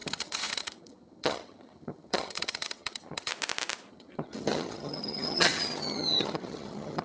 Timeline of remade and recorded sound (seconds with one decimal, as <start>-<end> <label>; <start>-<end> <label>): 0.0-3.3 remade; 3.3-3.9 recorded; 3.9-7.0 remade